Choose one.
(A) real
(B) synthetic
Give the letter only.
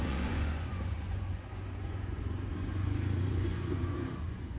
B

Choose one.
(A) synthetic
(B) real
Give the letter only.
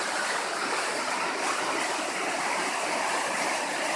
B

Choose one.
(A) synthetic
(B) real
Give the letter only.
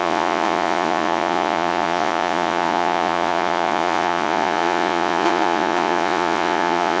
A